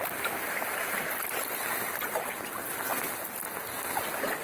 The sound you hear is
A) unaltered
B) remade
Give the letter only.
A